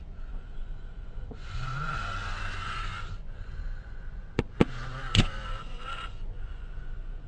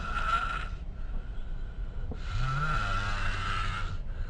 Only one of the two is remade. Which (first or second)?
first